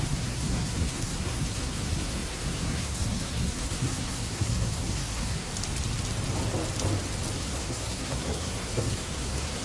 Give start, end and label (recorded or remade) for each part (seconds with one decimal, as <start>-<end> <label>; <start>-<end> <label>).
0.0-5.5 remade; 5.5-7.4 recorded; 7.4-9.6 remade